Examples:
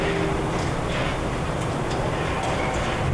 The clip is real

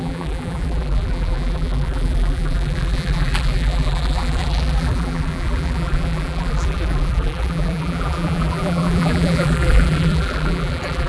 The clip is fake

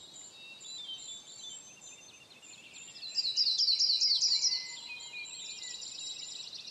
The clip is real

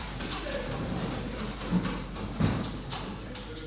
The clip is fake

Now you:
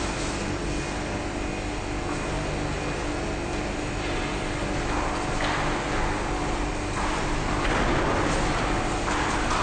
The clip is real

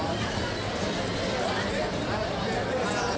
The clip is real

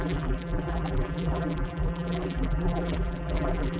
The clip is fake